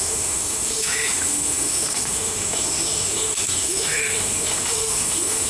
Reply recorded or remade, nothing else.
remade